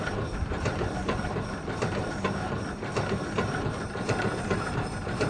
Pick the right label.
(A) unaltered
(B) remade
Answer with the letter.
B